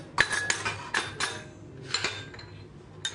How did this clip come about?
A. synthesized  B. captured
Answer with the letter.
B